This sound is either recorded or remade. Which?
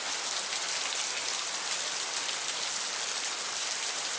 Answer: recorded